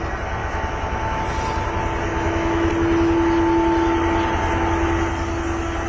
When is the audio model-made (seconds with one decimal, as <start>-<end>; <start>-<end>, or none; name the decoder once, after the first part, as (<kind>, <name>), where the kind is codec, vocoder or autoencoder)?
0.4-1.2 (autoencoder, DAC-VAE); 2.1-2.7